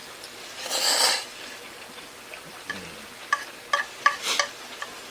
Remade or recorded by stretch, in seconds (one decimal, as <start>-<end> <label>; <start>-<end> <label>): 0.0-3.1 remade; 3.1-5.1 recorded